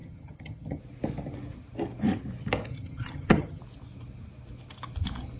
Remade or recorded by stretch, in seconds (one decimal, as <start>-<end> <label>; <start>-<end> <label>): 0.0-0.8 remade; 0.8-2.7 recorded; 2.7-3.6 remade; 3.6-5.4 recorded